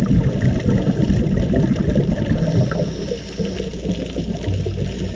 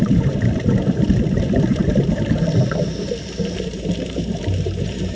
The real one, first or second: first